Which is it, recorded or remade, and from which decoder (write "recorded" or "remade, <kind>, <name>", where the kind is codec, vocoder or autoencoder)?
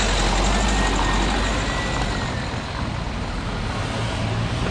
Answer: recorded